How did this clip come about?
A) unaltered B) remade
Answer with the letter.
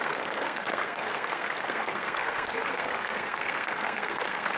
B